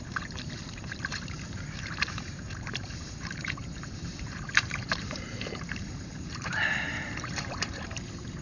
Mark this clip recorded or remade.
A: remade